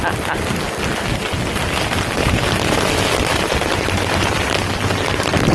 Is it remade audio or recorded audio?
recorded